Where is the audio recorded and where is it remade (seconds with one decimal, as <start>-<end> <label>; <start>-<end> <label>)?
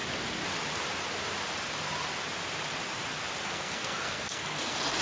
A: 0.0-3.4 recorded; 3.4-5.0 remade